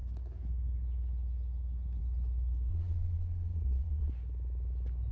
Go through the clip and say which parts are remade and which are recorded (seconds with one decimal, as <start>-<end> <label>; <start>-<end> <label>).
0.0-2.7 recorded; 2.7-4.1 remade; 4.1-5.1 recorded